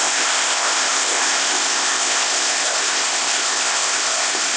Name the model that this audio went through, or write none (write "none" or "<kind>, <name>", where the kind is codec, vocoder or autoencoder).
codec, ZipCodec